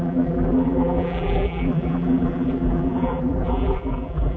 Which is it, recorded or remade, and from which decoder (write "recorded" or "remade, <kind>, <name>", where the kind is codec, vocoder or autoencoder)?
remade, vocoder, BigVGAN v2